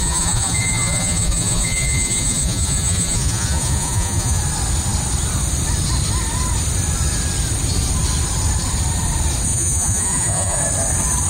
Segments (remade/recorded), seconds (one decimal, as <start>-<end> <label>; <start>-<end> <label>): 0.0-4.4 remade; 4.4-9.5 recorded; 9.5-10.6 remade; 10.6-11.3 recorded